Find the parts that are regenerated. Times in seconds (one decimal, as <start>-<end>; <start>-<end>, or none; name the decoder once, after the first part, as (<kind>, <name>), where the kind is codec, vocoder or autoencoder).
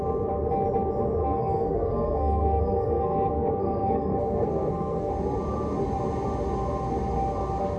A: 1.2-5.1 (codec, SNAC)